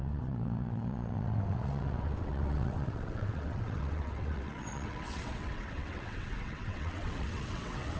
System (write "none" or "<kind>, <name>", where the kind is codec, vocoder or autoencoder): vocoder, WaveNeXt